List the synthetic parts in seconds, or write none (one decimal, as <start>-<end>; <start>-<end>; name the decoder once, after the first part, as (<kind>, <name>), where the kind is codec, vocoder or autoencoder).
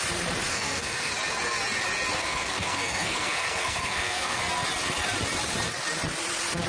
0.5-1.1 (codec, SNAC); 2.2-4.4